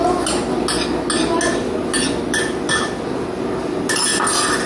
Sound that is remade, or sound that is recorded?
recorded